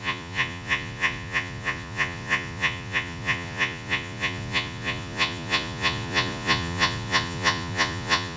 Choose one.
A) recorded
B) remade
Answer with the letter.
B